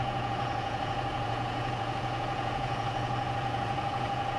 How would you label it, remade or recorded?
remade